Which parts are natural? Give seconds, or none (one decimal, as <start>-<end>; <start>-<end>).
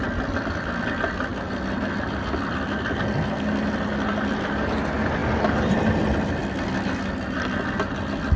0.0-8.4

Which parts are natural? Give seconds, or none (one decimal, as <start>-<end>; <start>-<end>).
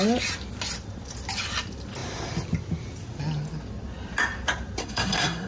0.0-4.8